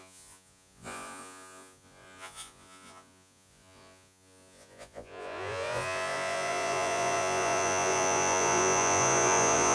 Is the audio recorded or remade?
remade